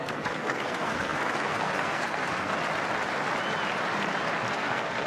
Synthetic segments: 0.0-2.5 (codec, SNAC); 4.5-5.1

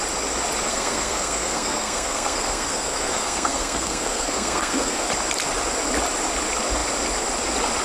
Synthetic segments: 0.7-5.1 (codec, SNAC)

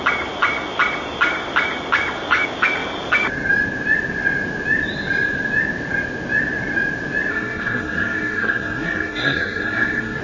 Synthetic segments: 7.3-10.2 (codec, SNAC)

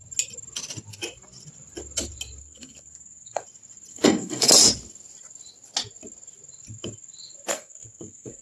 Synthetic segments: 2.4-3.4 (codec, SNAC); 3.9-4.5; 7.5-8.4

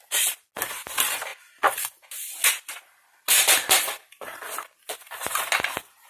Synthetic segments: none

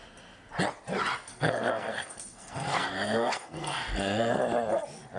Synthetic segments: 1.3-4.4 (codec, SNAC)

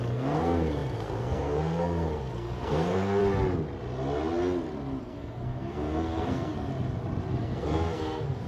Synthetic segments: 0.0-3.2 (codec, SNAC); 5.0-6.7; 7.4-8.5

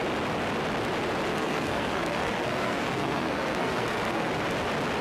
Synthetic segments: 1.3-4.3 (codec, SNAC)